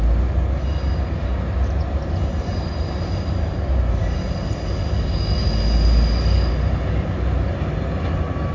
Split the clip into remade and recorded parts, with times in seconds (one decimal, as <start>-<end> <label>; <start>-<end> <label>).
0.0-8.5 recorded

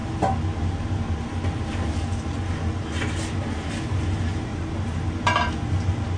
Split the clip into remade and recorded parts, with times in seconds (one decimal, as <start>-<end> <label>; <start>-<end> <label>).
0.0-4.5 recorded; 4.5-5.2 remade; 5.2-6.2 recorded

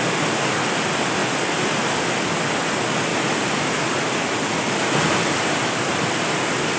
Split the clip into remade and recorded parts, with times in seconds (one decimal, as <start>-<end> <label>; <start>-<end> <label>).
0.0-1.2 recorded; 1.2-1.8 remade; 1.8-3.1 recorded; 3.1-6.8 remade